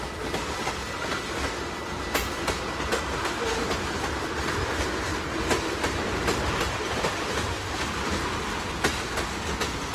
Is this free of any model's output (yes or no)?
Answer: yes